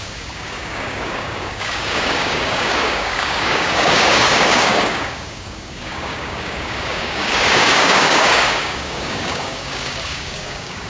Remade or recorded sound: remade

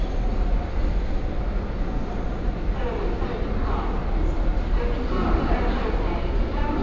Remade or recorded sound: recorded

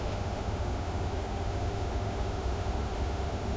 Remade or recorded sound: remade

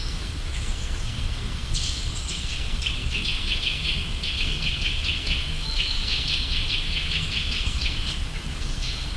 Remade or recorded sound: remade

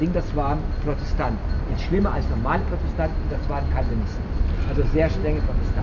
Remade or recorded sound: recorded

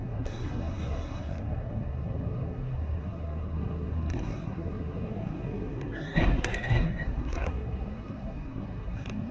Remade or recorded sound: remade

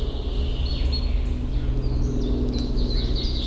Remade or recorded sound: recorded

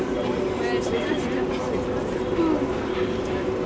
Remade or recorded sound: recorded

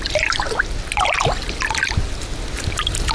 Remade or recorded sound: recorded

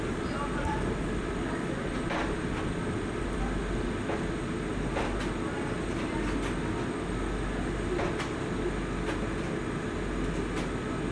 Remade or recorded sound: recorded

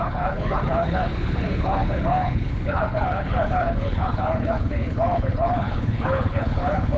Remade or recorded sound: remade